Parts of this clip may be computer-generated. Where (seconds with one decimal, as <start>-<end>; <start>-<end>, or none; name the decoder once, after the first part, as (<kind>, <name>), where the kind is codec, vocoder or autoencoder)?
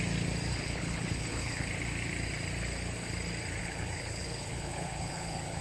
0.5-1.7 (codec, HILCodec); 3.6-5.6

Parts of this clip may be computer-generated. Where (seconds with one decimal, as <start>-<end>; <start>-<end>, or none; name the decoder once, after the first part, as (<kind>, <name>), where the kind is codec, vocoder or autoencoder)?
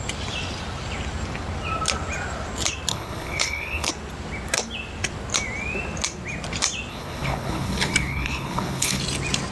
2.9-3.9 (codec, HILCodec); 6.9-9.0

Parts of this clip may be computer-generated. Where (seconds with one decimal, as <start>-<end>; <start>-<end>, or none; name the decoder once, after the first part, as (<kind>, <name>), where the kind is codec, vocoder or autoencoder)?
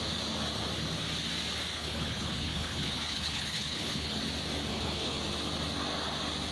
1.7-4.2 (codec, HILCodec); 4.7-5.2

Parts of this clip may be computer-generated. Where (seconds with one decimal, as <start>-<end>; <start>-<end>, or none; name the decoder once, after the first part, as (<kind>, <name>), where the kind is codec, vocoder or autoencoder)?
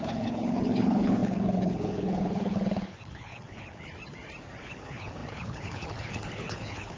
0.0-3.9 (codec, HILCodec); 4.6-7.0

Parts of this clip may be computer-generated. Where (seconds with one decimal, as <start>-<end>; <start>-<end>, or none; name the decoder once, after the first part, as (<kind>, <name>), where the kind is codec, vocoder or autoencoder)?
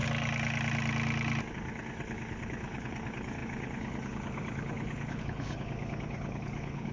1.5-6.9 (codec, HILCodec)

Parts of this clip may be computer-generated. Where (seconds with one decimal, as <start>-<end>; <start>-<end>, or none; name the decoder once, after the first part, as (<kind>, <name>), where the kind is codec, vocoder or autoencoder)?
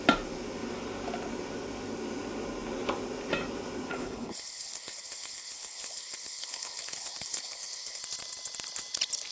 3.9-8.0 (codec, HILCodec)